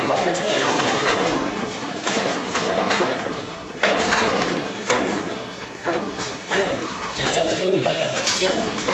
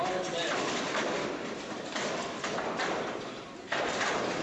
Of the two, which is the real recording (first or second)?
second